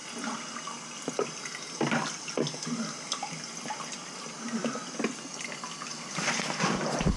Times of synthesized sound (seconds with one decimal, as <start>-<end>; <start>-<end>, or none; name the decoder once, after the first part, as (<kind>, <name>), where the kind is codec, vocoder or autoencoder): none